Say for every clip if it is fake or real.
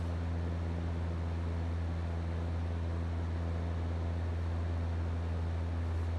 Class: real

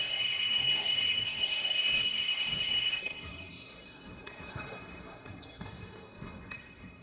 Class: fake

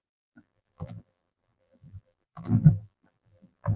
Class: fake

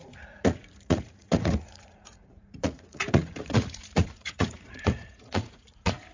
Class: fake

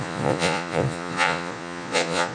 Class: fake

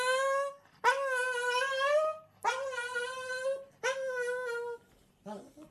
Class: real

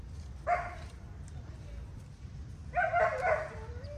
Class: real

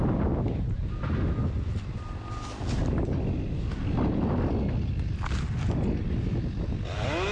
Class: real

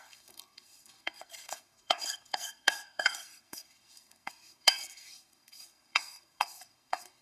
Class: fake